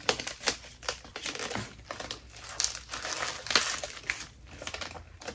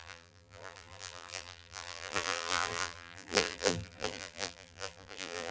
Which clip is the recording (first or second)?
first